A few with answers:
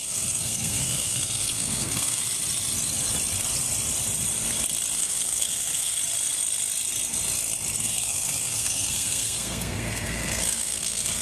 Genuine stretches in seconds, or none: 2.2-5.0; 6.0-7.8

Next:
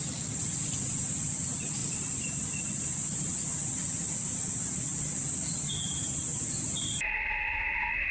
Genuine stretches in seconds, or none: 0.0-8.1

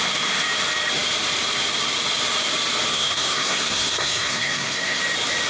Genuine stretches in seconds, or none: 0.0-2.9; 5.0-5.5

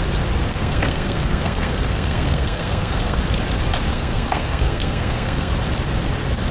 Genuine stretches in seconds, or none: 0.0-0.5; 3.2-3.9; 5.5-6.5

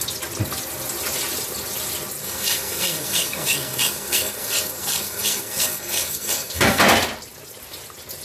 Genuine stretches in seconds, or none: 0.0-2.2; 6.8-8.2

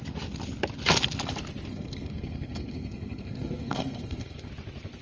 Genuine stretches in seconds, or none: 0.0-1.7; 4.5-5.0

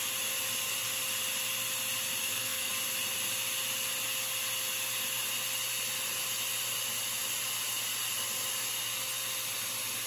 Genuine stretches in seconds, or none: 0.0-2.2; 2.7-10.1